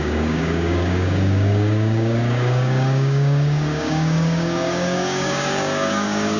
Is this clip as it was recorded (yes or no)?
no